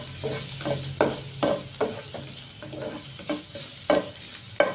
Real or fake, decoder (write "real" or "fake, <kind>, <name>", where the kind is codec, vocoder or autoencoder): real